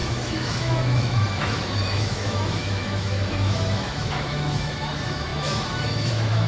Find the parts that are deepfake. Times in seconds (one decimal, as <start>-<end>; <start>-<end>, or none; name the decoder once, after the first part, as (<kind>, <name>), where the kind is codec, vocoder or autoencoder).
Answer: 0.0-6.5 (autoencoder, DAC-VAE)